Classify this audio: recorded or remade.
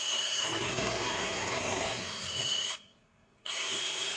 remade